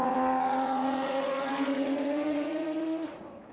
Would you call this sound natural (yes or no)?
no